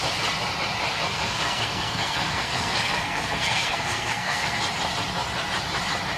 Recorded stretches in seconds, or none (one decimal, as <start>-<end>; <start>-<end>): 0.0-0.9; 4.6-6.2